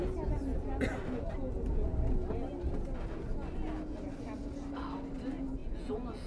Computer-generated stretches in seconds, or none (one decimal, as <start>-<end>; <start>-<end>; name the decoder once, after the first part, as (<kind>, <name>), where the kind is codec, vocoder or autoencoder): 5.6-6.3 (vocoder, Vocos)